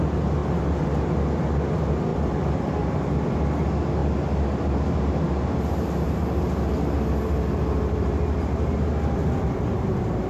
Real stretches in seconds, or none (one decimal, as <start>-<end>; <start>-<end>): 0.0-2.1; 3.6-9.2